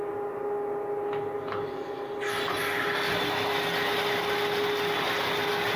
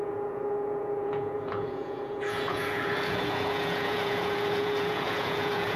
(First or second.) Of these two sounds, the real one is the first